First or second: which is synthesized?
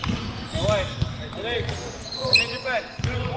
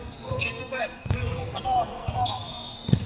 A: second